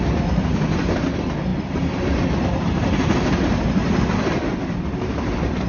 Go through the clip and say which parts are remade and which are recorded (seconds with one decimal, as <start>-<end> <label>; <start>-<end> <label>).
0.0-5.7 recorded